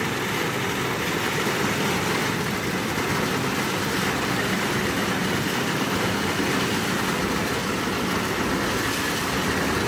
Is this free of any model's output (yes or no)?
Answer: yes